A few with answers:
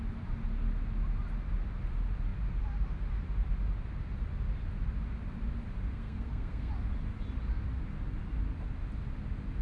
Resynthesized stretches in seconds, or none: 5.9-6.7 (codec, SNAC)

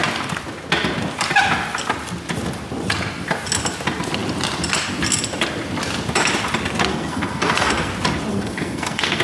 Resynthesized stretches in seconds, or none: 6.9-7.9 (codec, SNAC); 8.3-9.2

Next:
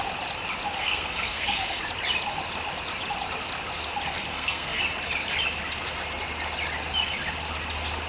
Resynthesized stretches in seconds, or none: 0.8-1.8 (codec, SNAC); 4.3-4.8